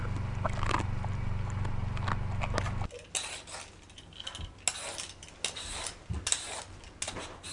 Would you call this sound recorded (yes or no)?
yes